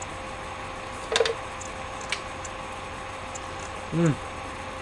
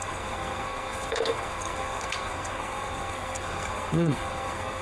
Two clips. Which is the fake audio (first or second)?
second